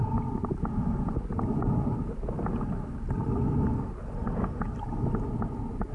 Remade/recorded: recorded